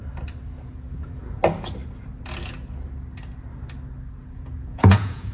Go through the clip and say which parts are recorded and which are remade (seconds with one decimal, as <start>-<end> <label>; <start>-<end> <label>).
0.0-0.6 recorded; 0.6-1.4 remade; 1.4-4.3 recorded; 4.3-5.3 remade